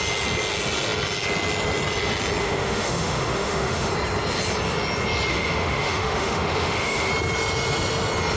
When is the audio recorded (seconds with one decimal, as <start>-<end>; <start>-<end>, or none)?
0.0-2.4; 3.9-5.3; 7.1-8.4